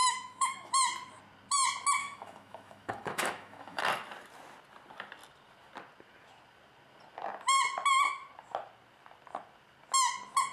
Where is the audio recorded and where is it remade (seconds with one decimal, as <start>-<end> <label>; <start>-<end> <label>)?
0.0-0.7 remade; 0.7-2.0 recorded; 2.0-3.8 remade; 3.8-10.5 recorded

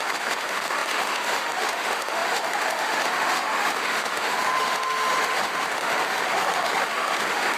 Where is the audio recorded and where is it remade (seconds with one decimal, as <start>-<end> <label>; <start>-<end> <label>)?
0.0-7.6 remade

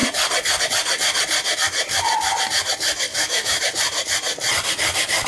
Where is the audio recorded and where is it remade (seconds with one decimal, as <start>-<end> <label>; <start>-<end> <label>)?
0.0-3.1 recorded; 3.1-3.6 remade; 3.6-5.3 recorded

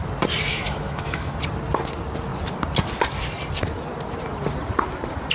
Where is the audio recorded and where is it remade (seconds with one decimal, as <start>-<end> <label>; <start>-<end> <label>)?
0.0-0.5 recorded; 0.5-1.3 remade; 1.3-5.3 recorded

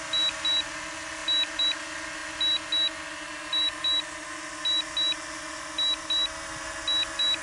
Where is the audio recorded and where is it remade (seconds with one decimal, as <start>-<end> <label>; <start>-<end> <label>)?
0.0-7.4 recorded

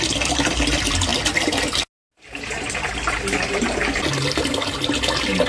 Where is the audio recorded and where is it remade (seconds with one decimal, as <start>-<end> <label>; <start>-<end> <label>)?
0.0-5.5 recorded

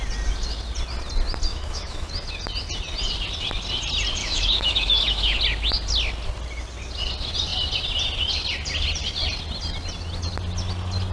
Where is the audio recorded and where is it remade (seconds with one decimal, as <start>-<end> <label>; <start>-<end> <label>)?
0.0-1.5 recorded; 1.5-2.1 remade; 2.1-4.2 recorded; 4.2-5.4 remade; 5.4-11.1 recorded